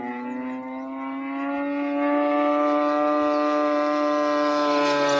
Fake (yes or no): no